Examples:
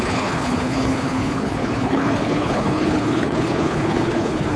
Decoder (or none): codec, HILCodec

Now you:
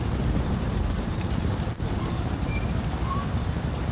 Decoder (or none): vocoder, BigVGAN v2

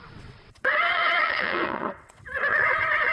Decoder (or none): vocoder, WaveNeXt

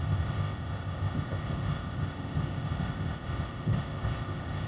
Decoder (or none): codec, ZipCodec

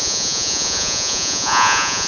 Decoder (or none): vocoder, Vocos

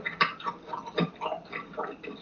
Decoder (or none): none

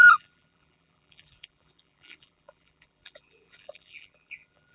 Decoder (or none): vocoder, BigVGAN v2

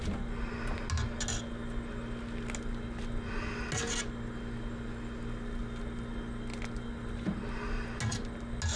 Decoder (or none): none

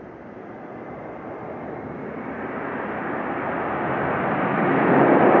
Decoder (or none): none